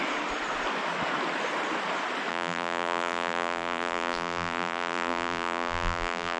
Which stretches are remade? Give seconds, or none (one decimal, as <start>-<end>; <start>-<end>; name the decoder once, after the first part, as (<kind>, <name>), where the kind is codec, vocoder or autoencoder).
2.3-6.4 (vocoder, BigVGAN v2)